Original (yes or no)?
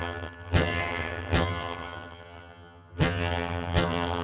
no